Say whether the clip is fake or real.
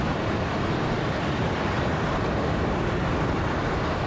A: real